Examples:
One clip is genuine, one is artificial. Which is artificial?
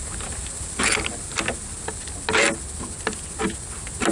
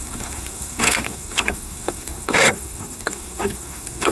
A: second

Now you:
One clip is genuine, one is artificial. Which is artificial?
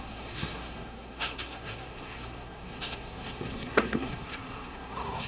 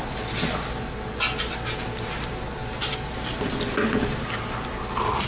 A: first